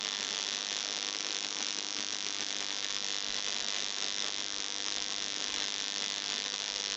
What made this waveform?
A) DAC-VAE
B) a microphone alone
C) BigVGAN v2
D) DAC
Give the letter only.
A